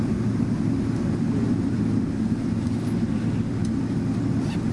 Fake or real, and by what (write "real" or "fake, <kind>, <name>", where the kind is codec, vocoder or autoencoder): real